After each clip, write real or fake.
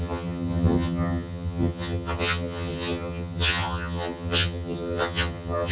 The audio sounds fake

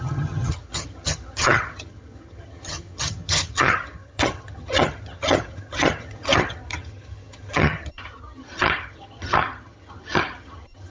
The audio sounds fake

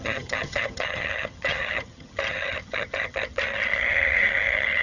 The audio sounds fake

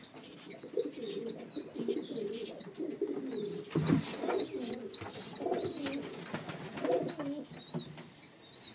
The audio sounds real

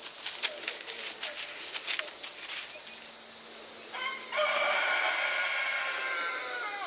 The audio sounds real